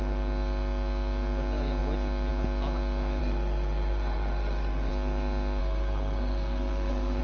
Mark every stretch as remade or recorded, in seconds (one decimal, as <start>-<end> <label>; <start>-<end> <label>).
0.0-3.2 recorded; 3.2-4.9 remade; 4.9-5.6 recorded; 5.6-7.2 remade